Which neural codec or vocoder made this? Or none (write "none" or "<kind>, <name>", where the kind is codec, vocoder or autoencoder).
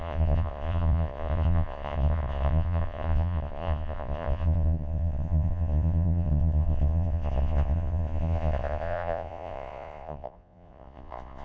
vocoder, Vocos